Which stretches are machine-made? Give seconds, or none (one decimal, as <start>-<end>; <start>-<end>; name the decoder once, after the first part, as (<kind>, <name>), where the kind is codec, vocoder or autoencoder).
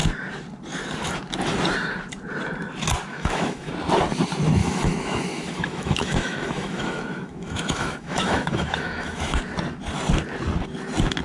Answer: 3.1-3.7 (autoencoder, DAC-VAE); 4.6-9.4